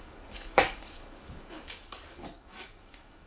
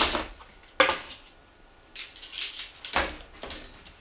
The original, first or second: second